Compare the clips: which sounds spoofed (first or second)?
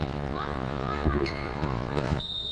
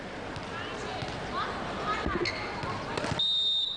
first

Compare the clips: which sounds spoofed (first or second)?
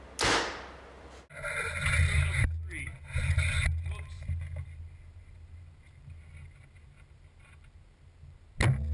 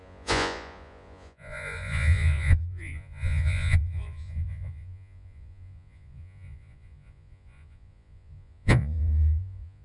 second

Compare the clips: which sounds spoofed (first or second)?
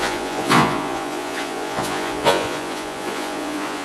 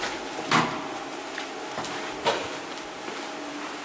first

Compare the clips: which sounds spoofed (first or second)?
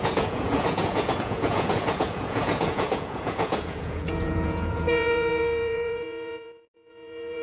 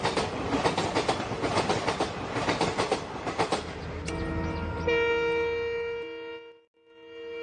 first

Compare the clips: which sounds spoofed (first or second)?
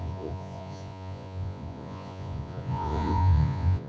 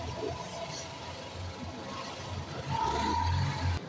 first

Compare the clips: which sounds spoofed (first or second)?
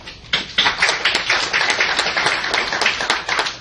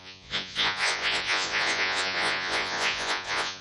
second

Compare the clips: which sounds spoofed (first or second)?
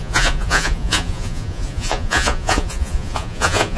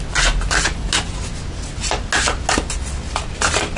first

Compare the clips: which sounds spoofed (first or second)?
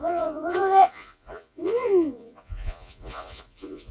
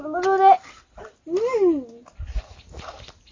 first